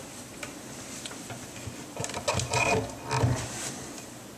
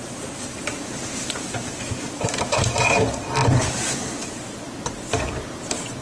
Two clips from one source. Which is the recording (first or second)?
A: first